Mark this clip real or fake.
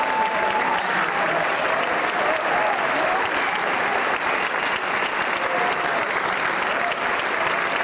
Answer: real